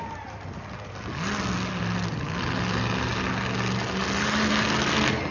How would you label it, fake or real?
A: real